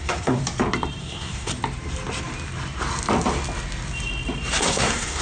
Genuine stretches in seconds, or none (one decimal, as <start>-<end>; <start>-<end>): 0.4-1.0; 1.5-4.6